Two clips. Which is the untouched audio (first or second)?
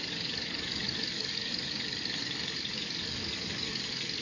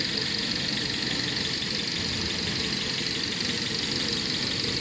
second